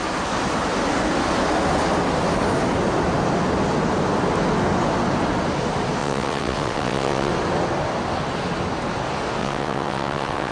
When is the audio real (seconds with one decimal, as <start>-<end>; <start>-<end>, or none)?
0.0-6.0; 7.3-9.4